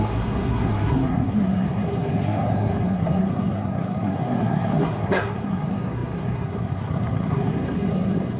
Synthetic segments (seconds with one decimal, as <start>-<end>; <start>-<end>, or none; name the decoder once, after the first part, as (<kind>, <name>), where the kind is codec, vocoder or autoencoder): 0.0-8.4 (codec, SNAC)